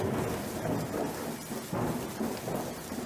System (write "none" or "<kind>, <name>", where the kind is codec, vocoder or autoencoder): none